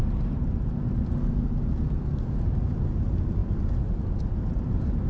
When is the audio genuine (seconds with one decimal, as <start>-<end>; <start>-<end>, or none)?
0.0-5.1